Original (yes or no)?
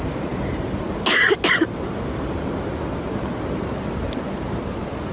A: yes